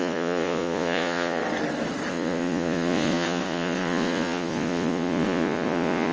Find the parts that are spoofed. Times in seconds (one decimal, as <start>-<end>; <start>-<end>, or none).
0.0-1.4; 2.1-6.1